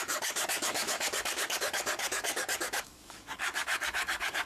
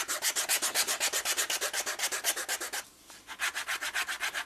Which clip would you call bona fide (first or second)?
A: second